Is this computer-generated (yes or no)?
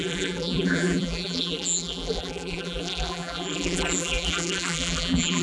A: yes